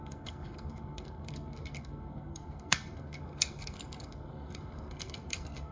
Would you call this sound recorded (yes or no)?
no